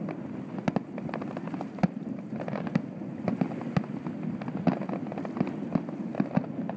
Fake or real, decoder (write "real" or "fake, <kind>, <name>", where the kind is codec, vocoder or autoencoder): real